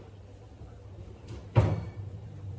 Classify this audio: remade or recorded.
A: remade